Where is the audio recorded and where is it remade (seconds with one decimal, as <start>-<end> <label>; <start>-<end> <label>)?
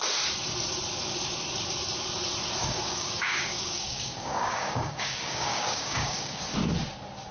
0.0-2.6 recorded; 2.6-6.4 remade; 6.4-7.3 recorded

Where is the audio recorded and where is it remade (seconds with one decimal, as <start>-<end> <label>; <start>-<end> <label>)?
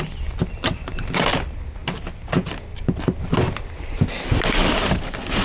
0.0-5.4 recorded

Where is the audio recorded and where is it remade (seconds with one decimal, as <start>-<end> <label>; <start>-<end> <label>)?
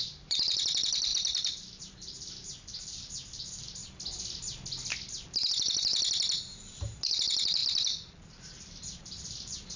0.0-3.8 remade; 3.8-6.8 recorded; 6.8-9.8 remade